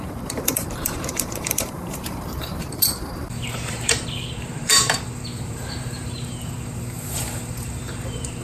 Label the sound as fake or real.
fake